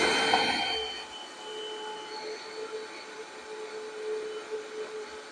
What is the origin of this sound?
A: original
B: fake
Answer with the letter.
A